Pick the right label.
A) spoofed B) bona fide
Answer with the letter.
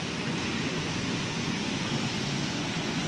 A